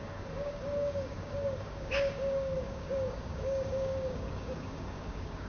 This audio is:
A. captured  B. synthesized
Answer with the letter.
B